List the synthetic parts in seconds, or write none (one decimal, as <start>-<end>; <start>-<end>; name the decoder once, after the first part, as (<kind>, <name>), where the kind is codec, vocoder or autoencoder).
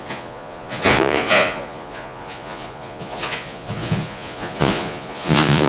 0.0-5.7 (vocoder, Vocos)